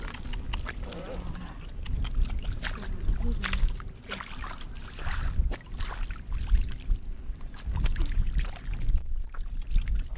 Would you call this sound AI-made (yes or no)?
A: no